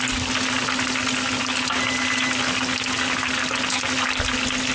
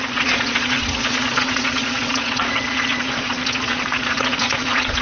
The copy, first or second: second